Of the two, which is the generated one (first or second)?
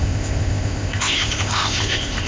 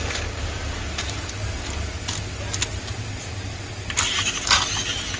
first